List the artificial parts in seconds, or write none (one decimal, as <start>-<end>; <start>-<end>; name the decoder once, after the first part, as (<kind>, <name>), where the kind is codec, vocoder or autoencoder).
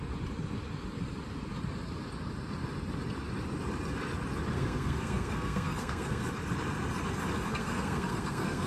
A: 4.5-6.3 (codec, SNAC); 7.5-8.7